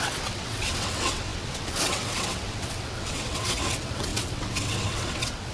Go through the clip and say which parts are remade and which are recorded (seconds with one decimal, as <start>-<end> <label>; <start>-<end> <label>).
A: 0.0-5.5 remade